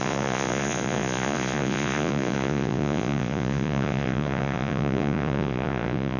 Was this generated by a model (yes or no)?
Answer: yes